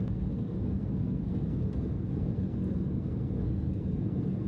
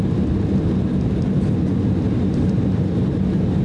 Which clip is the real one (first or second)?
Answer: second